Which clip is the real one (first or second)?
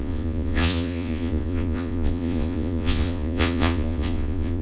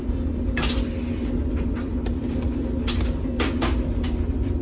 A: second